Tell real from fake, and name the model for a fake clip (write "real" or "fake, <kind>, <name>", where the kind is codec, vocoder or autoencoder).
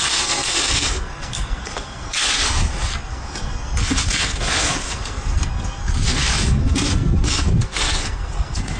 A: fake, codec, SNAC